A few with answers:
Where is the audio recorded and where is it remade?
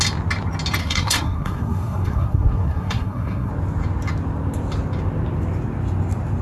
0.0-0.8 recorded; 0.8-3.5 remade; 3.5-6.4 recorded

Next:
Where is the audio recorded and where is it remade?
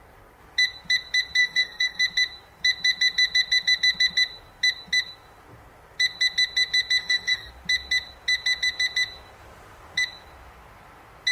0.0-1.4 recorded; 1.4-2.0 remade; 2.0-7.0 recorded; 7.0-7.5 remade; 7.5-11.3 recorded